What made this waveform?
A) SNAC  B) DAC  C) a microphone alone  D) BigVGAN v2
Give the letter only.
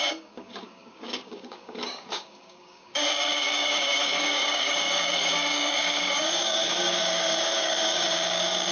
B